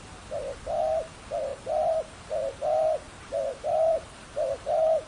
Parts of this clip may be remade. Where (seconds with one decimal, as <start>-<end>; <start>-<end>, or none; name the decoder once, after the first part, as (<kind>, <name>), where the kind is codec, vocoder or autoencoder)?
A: 1.5-2.1 (vocoder, BigVGAN v2); 3.5-5.1